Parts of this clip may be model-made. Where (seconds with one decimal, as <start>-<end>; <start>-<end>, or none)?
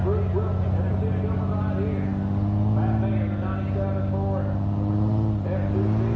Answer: none